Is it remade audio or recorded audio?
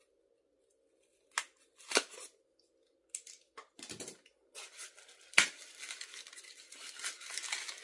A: recorded